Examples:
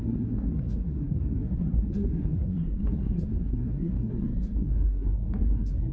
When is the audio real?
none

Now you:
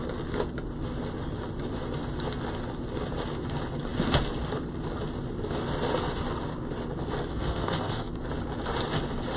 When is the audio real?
0.0-7.3; 8.1-9.4

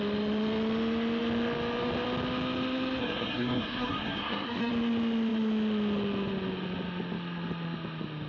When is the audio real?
0.0-3.0; 4.7-8.3